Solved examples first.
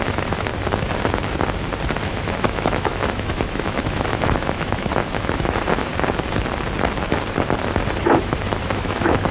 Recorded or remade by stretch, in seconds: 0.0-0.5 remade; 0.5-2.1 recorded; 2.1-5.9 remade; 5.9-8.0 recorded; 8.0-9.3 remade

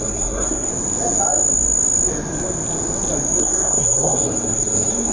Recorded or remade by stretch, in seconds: 0.0-0.7 remade; 0.7-3.4 recorded; 3.4-5.1 remade

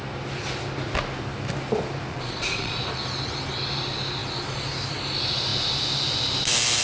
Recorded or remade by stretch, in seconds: 0.0-2.1 recorded; 2.1-2.8 remade; 2.8-6.8 recorded

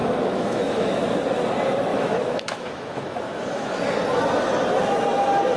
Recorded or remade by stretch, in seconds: 0.0-1.0 remade; 1.0-1.9 recorded; 1.9-3.8 remade; 3.8-5.6 recorded

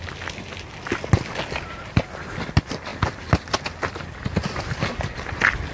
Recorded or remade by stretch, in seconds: 0.0-5.7 recorded

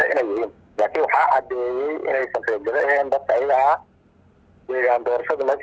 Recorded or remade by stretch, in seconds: 0.0-2.2 remade; 2.2-4.7 recorded; 4.7-5.6 remade

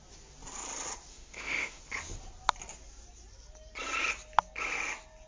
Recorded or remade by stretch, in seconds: 0.0-1.1 recorded; 1.1-1.8 remade; 1.8-5.3 recorded